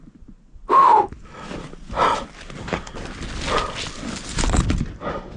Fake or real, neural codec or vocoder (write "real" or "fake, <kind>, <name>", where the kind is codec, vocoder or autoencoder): real